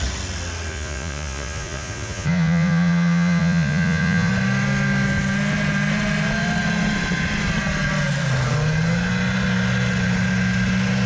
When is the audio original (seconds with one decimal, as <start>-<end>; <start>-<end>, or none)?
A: 0.0-0.7; 4.3-11.1